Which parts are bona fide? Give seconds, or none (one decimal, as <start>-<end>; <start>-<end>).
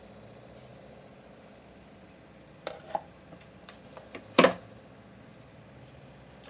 0.0-0.7; 4.2-5.3; 6.1-6.5